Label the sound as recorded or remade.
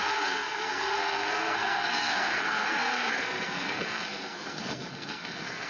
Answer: remade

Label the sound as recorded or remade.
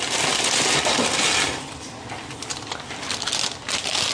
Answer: recorded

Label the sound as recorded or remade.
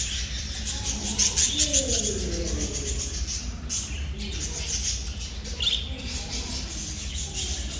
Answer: recorded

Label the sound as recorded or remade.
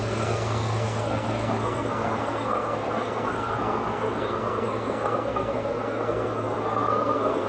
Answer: remade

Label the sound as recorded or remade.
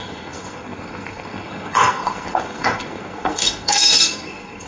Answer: remade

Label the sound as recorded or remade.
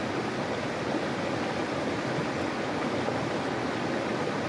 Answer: recorded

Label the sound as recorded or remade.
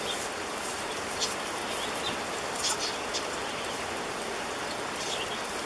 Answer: recorded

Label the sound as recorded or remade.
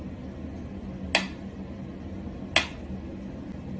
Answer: recorded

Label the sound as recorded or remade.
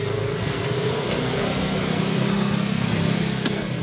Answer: remade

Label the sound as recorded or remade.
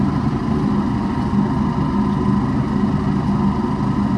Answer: recorded